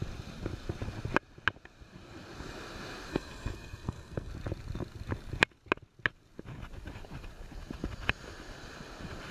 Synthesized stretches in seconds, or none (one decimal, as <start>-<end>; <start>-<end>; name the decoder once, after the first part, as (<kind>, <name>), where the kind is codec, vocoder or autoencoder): 3.1-4.3 (codec, SNAC)